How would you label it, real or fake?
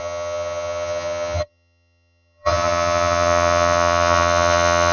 fake